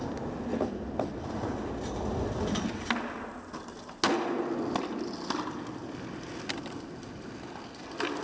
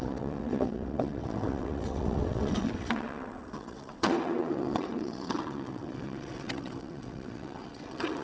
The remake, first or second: second